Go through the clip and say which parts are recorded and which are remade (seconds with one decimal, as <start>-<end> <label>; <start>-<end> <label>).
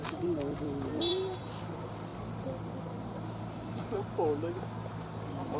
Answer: 0.0-2.1 remade; 2.1-5.6 recorded